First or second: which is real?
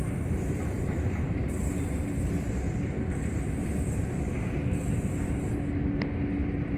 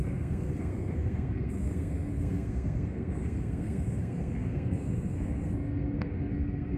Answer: first